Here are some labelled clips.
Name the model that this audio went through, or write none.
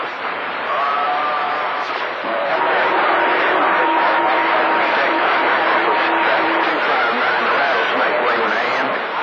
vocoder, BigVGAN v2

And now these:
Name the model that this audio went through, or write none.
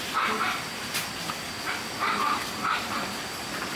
none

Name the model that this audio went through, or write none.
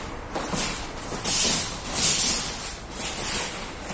none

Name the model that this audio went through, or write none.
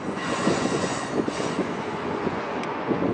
vocoder, Vocos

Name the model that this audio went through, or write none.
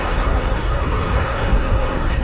codec, SNAC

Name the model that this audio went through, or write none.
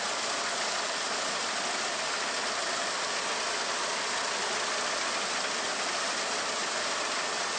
none